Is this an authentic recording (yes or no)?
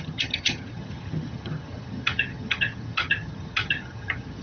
no